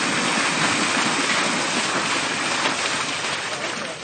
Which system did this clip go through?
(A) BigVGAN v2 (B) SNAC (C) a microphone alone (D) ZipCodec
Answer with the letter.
C